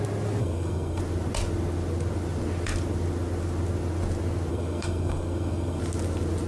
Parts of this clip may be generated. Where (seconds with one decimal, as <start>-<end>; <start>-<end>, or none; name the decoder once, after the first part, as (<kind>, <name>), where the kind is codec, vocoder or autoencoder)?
0.4-1.0 (codec, SNAC); 4.5-5.8